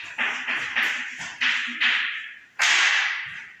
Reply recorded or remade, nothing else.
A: remade